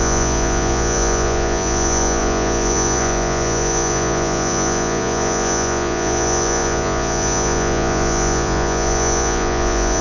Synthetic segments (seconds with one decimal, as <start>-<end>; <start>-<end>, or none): 0.0-10.0